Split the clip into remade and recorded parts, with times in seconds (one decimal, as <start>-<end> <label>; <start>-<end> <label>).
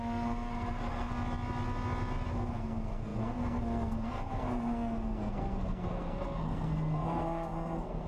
0.0-1.1 remade; 1.1-2.5 recorded; 2.5-8.1 remade